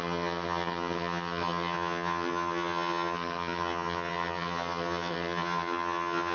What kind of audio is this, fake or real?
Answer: fake